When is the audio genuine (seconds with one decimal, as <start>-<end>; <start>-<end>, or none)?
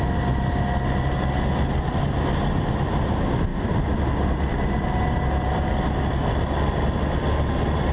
0.0-7.9